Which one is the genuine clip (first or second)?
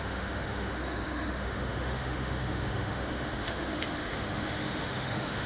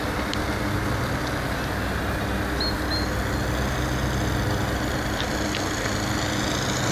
second